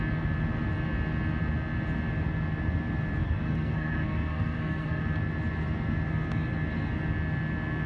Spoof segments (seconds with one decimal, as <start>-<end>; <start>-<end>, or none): 3.2-5.0